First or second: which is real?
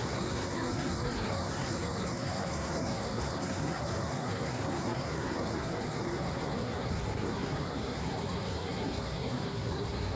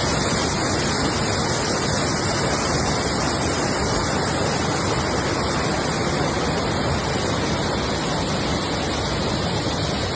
second